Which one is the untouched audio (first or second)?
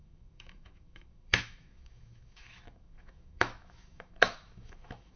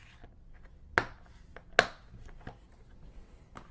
second